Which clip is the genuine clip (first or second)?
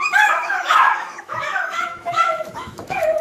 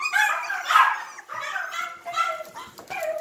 second